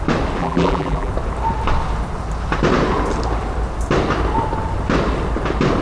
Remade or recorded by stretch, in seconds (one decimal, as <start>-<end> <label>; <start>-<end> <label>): 0.0-0.4 recorded; 0.4-1.1 remade; 1.1-5.8 recorded